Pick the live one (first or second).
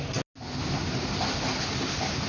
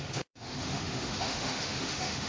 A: first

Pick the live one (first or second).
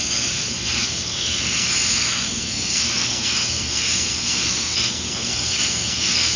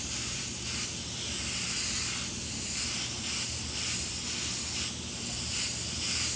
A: second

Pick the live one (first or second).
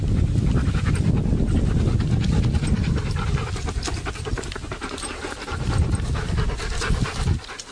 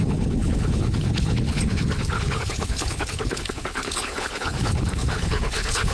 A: first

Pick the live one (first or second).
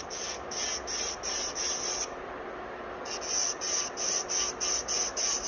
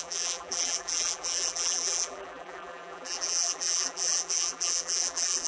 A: first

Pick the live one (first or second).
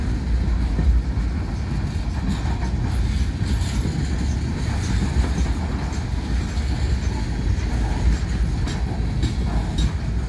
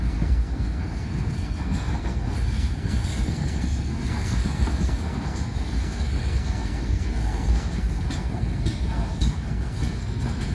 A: first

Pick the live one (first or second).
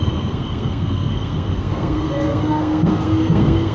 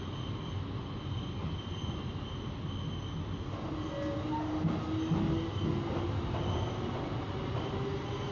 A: second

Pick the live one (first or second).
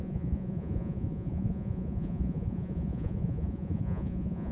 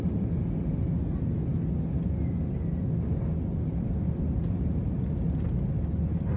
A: second